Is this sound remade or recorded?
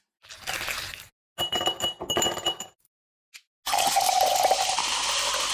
recorded